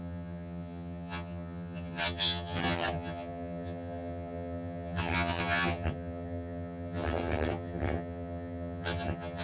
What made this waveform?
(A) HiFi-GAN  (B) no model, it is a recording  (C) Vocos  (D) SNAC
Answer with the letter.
A